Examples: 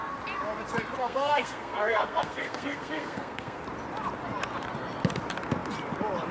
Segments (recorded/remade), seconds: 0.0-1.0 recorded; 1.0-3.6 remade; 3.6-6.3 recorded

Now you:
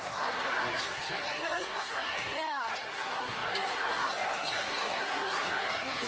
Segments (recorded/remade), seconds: 0.0-6.1 remade

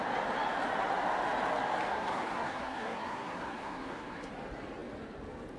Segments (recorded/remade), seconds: 0.0-1.9 recorded; 1.9-4.3 remade; 4.3-5.6 recorded